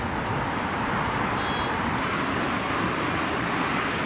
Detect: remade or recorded recorded